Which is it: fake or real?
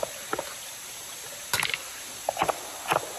real